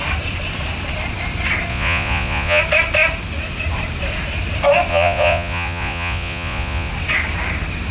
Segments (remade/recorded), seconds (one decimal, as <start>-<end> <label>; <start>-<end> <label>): 0.0-1.7 recorded; 1.7-2.6 remade; 2.6-4.9 recorded; 4.9-6.9 remade; 6.9-7.9 recorded